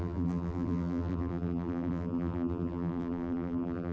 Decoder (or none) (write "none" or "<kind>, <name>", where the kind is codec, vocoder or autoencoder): vocoder, BigVGAN v2